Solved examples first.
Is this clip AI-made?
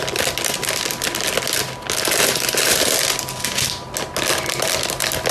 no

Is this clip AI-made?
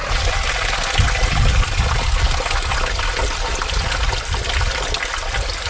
no